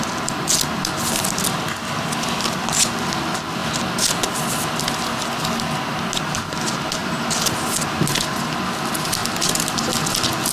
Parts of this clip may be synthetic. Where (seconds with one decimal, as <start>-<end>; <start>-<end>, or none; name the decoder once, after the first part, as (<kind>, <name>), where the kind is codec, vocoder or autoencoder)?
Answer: none